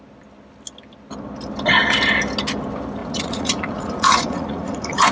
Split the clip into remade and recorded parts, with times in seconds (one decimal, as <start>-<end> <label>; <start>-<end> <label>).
0.0-3.0 recorded; 3.0-5.1 remade